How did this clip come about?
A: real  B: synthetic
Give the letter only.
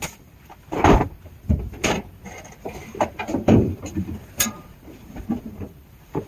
B